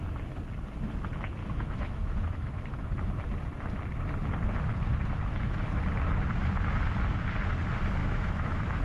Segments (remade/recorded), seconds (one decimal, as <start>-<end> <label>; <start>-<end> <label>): 0.0-1.4 recorded; 1.4-2.9 remade; 2.9-5.3 recorded; 5.3-5.8 remade; 5.8-8.0 recorded; 8.0-8.8 remade